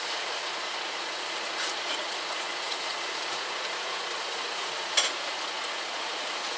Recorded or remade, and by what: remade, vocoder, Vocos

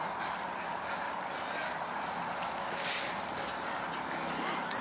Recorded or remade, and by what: recorded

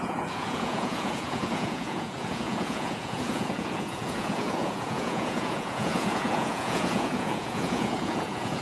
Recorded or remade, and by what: remade, vocoder, Vocos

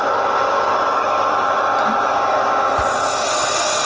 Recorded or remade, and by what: recorded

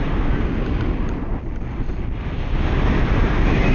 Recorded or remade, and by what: recorded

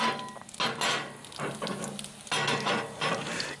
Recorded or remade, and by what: recorded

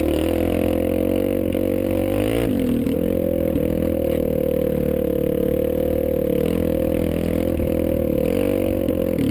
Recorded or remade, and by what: recorded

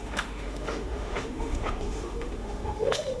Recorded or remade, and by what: remade, autoencoder, DAC-VAE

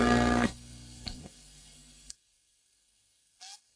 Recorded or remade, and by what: remade, codec, SNAC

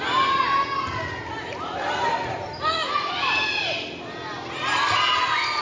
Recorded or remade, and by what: recorded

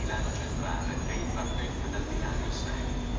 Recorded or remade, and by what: recorded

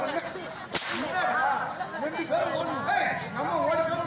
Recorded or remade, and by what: recorded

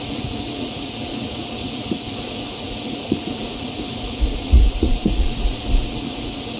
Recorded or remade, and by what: remade, vocoder, Vocos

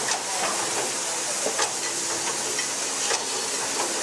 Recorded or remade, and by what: recorded